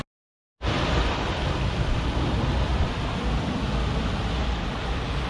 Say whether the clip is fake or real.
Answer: real